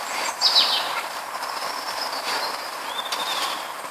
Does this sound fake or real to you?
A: fake